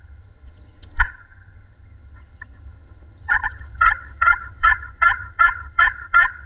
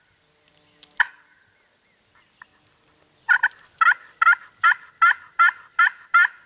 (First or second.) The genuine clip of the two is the second